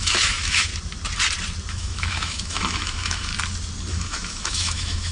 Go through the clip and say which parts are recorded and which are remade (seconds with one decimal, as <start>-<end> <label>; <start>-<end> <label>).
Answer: 0.0-0.7 remade; 0.7-1.7 recorded; 1.7-3.3 remade; 3.3-3.9 recorded; 3.9-5.1 remade